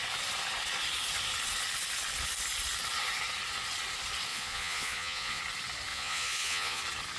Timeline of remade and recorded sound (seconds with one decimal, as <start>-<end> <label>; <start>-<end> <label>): 0.0-4.3 recorded; 4.3-5.4 remade; 5.4-5.9 recorded; 5.9-6.8 remade; 6.8-7.2 recorded